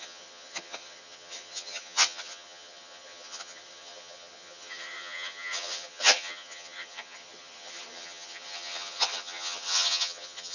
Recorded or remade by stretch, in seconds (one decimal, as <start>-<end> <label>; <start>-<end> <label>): 0.0-10.5 remade